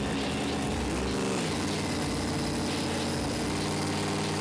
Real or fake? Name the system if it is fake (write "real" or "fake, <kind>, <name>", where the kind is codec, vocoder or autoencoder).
real